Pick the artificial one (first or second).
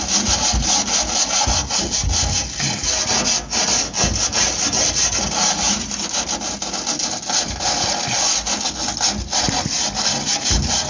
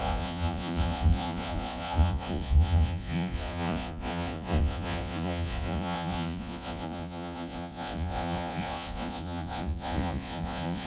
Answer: second